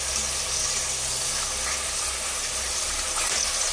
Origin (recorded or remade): recorded